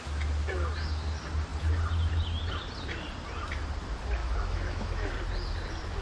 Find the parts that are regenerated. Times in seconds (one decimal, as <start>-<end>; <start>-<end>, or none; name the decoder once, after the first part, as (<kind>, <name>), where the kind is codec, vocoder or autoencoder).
4.2-5.1 (autoencoder, DAC-VAE)